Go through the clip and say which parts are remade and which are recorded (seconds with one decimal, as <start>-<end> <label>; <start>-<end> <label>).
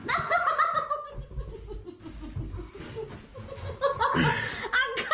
0.0-5.1 recorded